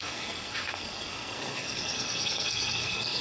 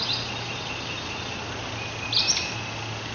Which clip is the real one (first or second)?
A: second